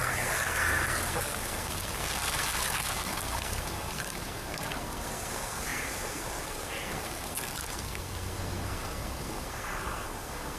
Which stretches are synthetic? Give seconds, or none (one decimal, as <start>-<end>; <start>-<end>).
0.0-10.6